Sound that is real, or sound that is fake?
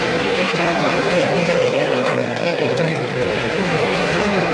fake